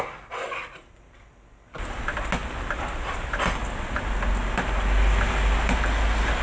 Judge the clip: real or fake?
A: real